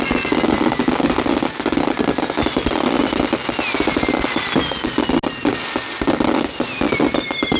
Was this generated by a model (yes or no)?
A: no